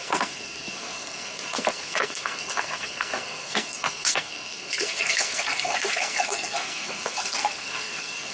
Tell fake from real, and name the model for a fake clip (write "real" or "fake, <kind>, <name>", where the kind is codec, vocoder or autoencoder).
fake, codec, SNAC